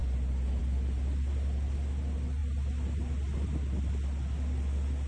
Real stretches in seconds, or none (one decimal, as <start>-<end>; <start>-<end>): 0.0-5.1